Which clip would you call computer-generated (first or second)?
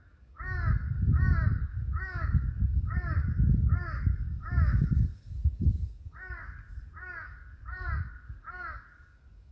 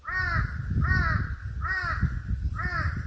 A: first